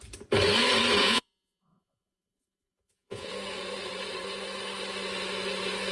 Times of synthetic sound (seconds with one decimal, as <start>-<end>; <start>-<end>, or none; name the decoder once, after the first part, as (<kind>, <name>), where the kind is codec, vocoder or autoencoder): 1.0-3.3 (vocoder, Vocos)

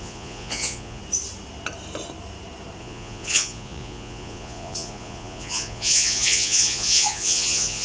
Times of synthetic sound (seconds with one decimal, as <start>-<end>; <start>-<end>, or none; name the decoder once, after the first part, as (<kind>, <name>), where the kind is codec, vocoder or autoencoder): 0.0-1.0 (vocoder, Vocos); 2.8-7.8

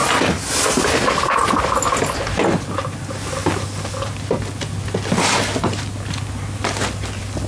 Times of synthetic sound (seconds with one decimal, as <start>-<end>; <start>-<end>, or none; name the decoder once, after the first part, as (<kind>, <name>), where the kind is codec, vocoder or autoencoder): none